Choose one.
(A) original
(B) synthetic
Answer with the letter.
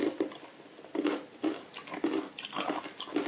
A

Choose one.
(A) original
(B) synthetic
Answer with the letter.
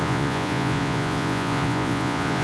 B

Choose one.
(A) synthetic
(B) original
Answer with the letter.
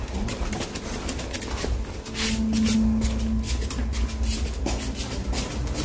B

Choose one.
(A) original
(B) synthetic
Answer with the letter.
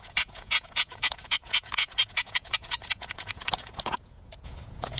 B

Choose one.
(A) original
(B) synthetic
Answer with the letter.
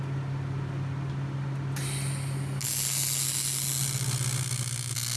A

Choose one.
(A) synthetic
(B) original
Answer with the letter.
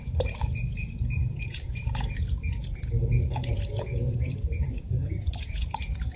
A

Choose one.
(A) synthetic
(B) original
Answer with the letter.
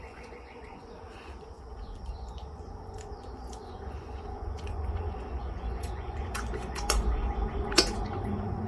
A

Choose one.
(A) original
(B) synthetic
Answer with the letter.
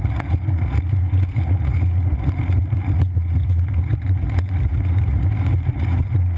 B